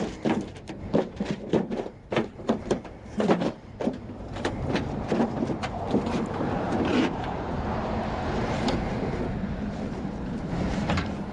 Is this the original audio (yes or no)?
no